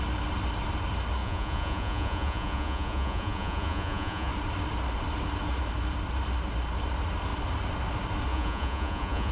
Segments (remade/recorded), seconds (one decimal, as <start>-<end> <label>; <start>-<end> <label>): 0.0-1.2 recorded; 1.2-4.3 remade; 4.3-8.3 recorded; 8.3-9.3 remade